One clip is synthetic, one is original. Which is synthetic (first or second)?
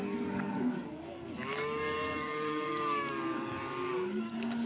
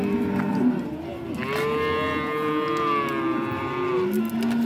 first